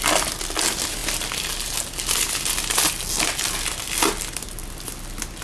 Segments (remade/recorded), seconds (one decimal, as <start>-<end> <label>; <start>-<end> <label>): 0.0-5.4 recorded